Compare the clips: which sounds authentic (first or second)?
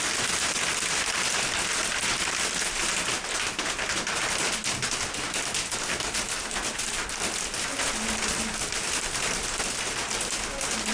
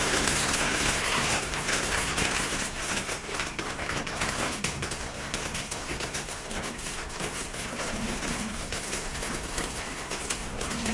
first